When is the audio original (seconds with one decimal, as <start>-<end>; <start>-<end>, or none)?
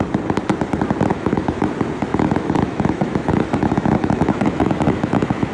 0.0-1.1; 1.7-2.1